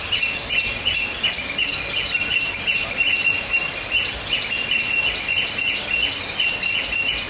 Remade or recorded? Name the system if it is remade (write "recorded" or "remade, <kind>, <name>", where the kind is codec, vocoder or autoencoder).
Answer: recorded